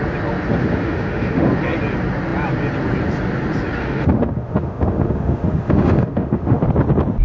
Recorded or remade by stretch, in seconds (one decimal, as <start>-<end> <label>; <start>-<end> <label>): 0.0-0.6 recorded; 0.6-1.5 remade; 1.5-3.8 recorded; 3.8-6.6 remade; 6.6-7.2 recorded